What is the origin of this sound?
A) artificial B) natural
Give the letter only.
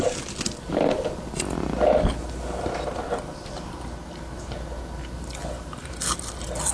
B